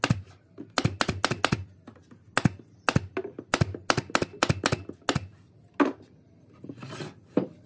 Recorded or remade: recorded